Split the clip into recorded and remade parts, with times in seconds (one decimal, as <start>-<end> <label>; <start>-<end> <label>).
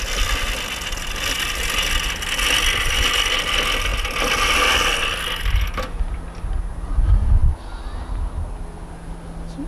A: 0.0-9.7 recorded